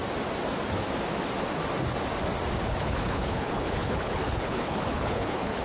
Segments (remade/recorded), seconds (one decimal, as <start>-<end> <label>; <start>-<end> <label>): 0.0-2.6 recorded; 2.6-5.6 remade